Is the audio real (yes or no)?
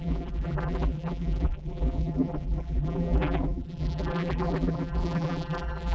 no